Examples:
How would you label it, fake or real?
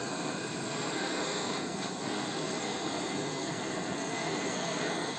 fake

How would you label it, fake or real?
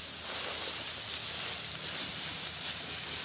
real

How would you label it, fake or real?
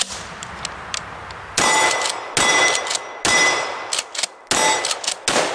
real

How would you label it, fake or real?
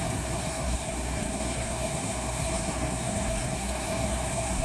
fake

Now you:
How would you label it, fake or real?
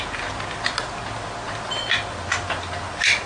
real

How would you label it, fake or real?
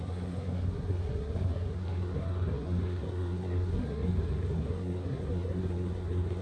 fake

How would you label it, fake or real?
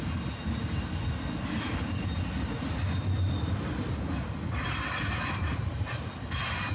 real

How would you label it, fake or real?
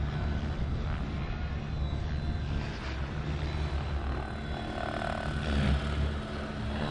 real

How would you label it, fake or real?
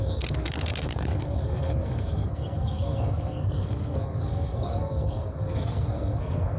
fake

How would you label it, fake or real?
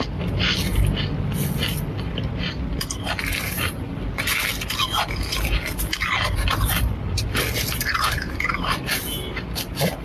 real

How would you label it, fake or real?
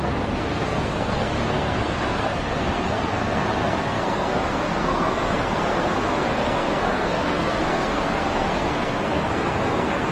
fake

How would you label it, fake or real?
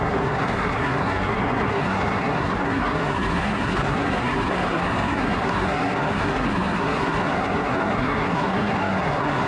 fake